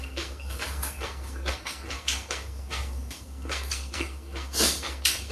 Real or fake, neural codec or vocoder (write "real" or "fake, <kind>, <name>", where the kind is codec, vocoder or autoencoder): fake, codec, SNAC